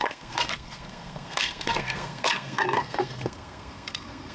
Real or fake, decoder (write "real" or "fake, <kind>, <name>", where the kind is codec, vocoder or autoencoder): fake, codec, SNAC